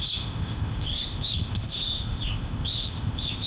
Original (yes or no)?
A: no